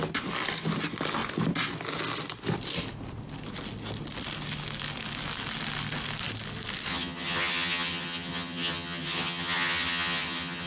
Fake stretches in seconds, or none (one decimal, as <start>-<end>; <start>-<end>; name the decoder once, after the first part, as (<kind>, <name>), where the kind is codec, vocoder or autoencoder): 6.9-10.7 (vocoder, HiFi-GAN)